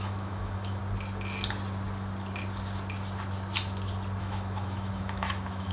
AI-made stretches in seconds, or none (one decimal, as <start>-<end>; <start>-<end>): 0.0-0.8; 4.2-5.7